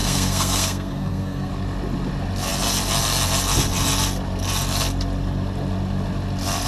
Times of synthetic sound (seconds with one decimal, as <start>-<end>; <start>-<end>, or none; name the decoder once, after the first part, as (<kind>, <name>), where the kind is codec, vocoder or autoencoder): 0.0-1.5 (codec, SNAC)